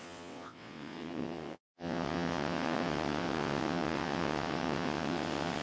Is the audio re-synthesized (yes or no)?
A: yes